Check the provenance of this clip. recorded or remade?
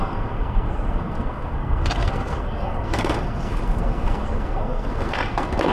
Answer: remade